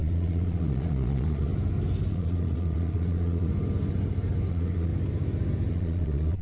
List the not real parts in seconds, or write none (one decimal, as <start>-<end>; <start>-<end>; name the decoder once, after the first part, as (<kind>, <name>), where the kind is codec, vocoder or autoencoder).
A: 0.0-1.5 (vocoder, Vocos); 2.1-3.5; 4.5-4.9; 5.7-6.4